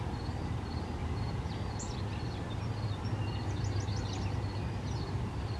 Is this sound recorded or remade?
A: recorded